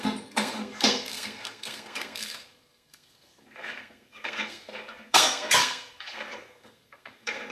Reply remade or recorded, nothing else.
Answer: remade